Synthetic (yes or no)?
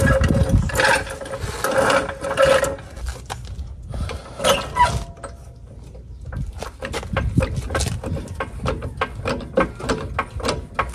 no